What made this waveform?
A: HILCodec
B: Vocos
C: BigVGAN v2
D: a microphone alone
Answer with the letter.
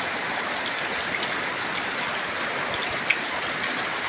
D